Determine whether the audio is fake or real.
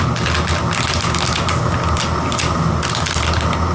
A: real